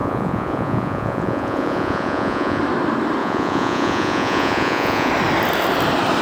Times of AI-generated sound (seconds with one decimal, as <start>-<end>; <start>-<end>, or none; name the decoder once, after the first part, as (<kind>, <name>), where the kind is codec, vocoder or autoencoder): 0.0-2.6 (vocoder, Vocos); 3.2-5.1